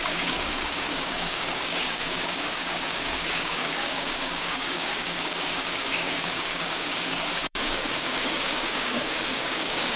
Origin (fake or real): fake